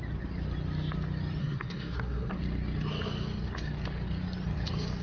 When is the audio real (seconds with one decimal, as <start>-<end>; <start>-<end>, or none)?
0.0-1.4; 2.4-5.0